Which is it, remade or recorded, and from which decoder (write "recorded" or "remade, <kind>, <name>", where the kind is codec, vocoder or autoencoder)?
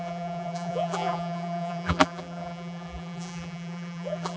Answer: remade, vocoder, BigVGAN v2